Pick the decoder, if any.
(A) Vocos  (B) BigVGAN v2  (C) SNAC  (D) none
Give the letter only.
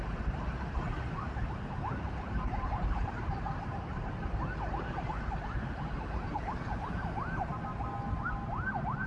D